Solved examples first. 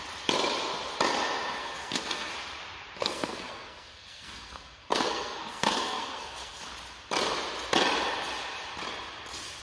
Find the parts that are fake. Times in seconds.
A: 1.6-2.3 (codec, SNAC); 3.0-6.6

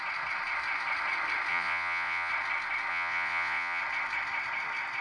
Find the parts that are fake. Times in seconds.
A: 1.5-2.3 (vocoder, Vocos); 2.9-3.8